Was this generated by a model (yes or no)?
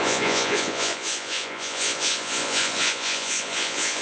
yes